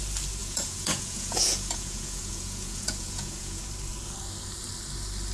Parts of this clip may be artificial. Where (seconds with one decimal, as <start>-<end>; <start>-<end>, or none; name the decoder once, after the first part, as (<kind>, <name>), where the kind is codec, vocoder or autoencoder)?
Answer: 0.4-3.6 (vocoder, Vocos)